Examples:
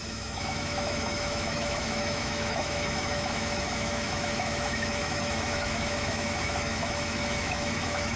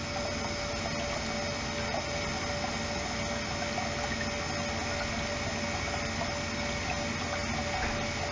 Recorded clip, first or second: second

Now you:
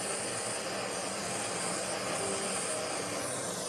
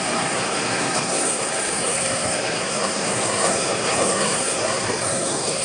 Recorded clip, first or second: first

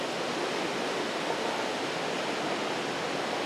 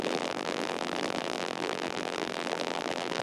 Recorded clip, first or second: first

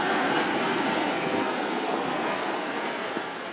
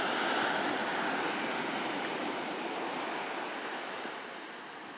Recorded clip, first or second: second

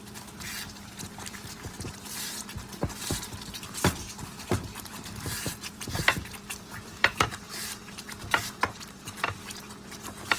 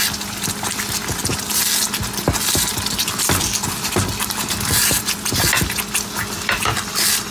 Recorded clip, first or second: second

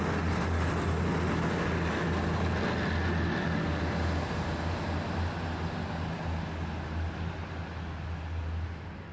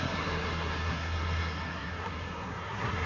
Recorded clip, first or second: first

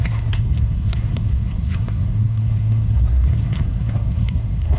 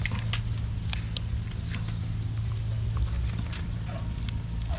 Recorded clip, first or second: second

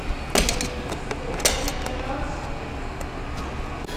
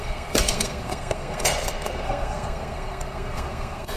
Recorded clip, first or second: first